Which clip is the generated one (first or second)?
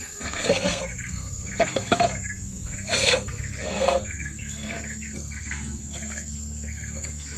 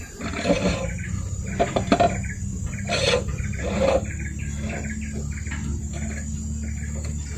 first